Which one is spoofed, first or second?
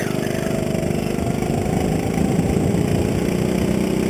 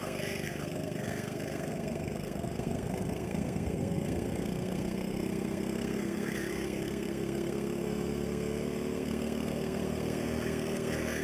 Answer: second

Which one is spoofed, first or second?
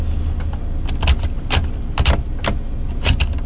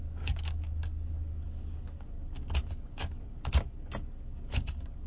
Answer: second